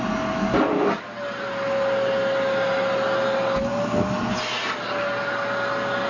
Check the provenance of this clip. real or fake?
real